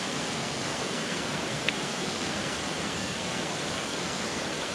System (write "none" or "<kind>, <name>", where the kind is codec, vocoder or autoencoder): codec, SNAC